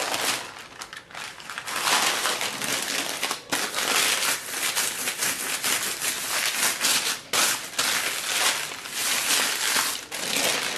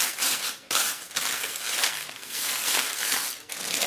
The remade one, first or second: second